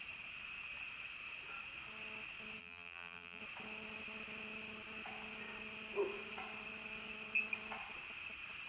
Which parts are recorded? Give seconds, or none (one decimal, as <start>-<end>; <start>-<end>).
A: 0.0-2.6; 3.4-8.7